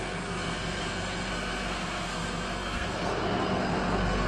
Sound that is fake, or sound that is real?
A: fake